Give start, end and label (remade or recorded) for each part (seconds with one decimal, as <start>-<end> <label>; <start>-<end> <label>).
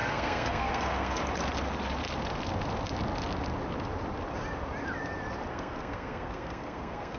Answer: 0.0-1.2 remade; 1.2-5.5 recorded; 5.5-7.2 remade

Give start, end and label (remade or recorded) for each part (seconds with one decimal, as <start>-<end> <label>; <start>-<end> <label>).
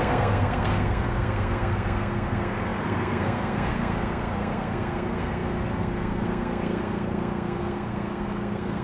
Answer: 0.0-8.8 remade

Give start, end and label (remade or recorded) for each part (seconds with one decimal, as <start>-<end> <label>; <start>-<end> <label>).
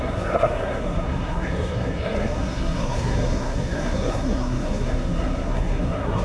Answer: 0.0-6.2 remade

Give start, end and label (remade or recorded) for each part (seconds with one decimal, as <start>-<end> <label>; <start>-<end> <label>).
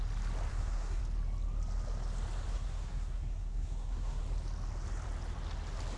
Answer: 0.0-0.5 recorded; 0.5-1.0 remade; 1.0-2.5 recorded; 2.5-4.2 remade; 4.2-6.0 recorded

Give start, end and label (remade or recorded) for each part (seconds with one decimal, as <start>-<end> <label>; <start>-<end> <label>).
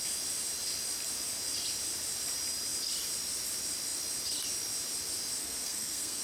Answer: 0.0-5.4 recorded; 5.4-6.2 remade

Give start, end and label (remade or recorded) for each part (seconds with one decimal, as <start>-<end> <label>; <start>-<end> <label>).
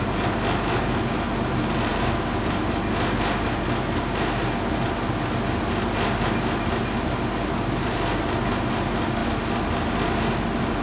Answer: 0.0-10.8 recorded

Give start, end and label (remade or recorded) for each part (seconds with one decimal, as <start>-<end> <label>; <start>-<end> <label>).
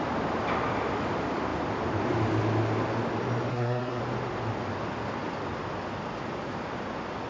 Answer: 0.0-3.5 recorded; 3.5-4.0 remade; 4.0-7.3 recorded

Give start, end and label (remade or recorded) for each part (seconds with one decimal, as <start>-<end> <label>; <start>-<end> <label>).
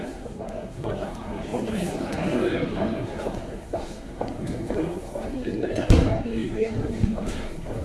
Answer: 0.0-7.8 remade